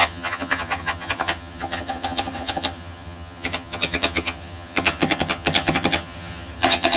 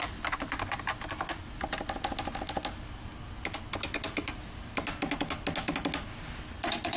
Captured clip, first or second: second